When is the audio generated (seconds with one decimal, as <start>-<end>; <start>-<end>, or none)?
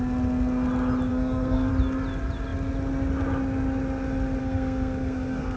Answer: 1.1-1.7; 4.4-5.6